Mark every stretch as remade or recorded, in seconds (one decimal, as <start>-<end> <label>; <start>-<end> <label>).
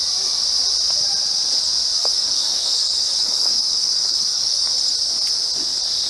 0.0-2.0 recorded; 2.0-4.7 remade; 4.7-6.1 recorded